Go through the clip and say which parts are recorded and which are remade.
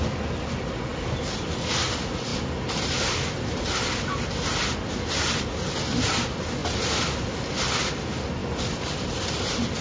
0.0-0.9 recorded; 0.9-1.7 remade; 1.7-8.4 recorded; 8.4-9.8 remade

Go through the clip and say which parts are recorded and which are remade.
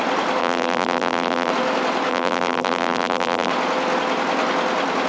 0.0-0.4 recorded; 0.4-1.5 remade; 1.5-2.1 recorded; 2.1-3.5 remade; 3.5-5.1 recorded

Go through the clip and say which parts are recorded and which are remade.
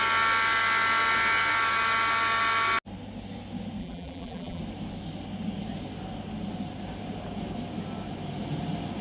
0.0-3.8 recorded; 3.8-4.6 remade; 4.6-9.0 recorded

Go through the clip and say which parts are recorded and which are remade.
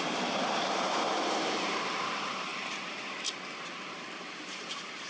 0.0-5.1 remade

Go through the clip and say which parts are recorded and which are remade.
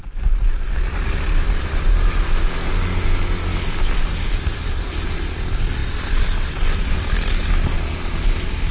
0.0-5.8 recorded; 5.8-7.4 remade; 7.4-8.7 recorded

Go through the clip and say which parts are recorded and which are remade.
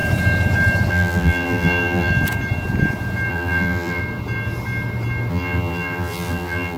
0.0-0.9 recorded; 0.9-2.1 remade; 2.1-3.3 recorded; 3.3-4.0 remade; 4.0-5.3 recorded; 5.3-6.8 remade